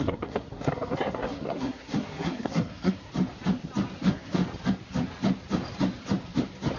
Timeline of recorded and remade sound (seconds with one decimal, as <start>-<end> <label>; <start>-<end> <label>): 0.0-3.1 remade; 3.1-4.0 recorded; 4.0-4.4 remade; 4.4-6.8 recorded